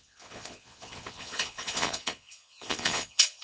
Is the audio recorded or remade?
remade